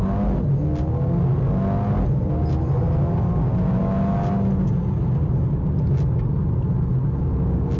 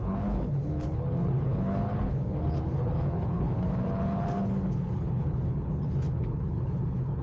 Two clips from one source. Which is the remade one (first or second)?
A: second